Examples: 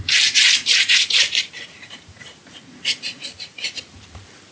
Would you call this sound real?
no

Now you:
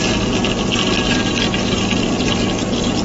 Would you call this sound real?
yes